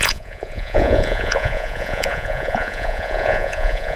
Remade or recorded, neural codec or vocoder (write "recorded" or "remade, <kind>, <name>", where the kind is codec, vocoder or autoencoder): remade, vocoder, Vocos